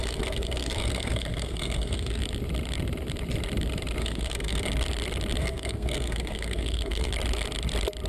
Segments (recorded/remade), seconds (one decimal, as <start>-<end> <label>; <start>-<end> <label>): 0.0-2.2 remade; 2.2-4.0 recorded; 4.0-4.7 remade; 4.7-5.4 recorded; 5.4-7.1 remade; 7.1-8.1 recorded